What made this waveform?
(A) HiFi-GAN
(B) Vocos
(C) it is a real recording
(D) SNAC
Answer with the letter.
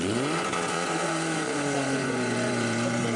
B